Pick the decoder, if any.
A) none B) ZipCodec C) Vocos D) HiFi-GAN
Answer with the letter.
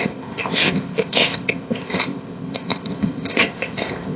B